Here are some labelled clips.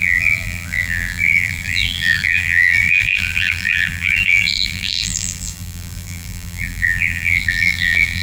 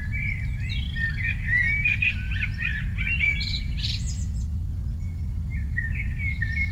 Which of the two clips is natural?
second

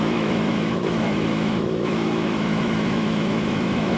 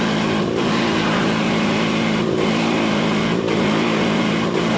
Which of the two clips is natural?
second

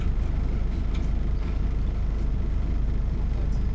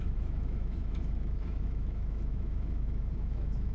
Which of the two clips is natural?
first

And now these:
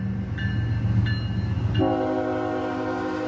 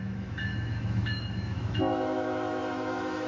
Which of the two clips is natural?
first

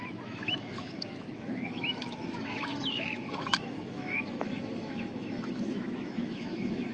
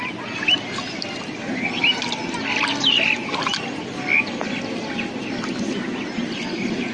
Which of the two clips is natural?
second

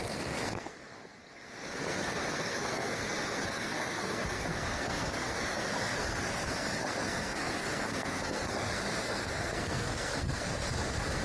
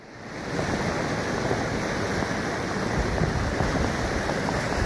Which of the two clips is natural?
second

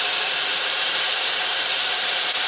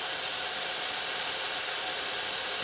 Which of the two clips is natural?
second